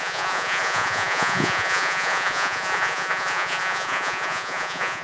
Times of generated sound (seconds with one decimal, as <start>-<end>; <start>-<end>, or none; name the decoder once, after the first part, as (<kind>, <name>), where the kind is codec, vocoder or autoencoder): 0.0-5.0 (vocoder, Vocos)